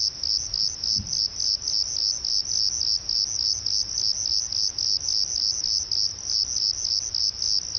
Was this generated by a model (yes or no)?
no